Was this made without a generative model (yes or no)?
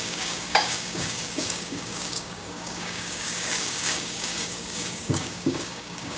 no